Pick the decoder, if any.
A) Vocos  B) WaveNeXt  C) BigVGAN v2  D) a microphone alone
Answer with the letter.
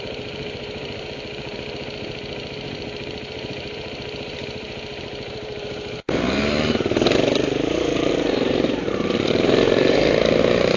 C